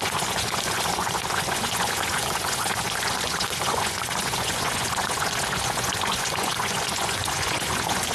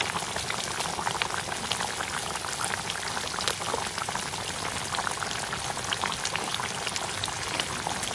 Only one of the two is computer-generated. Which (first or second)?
first